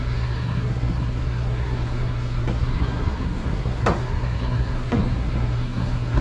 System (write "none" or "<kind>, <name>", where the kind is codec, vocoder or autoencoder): codec, SNAC